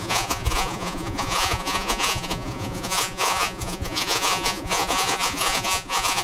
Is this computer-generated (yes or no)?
yes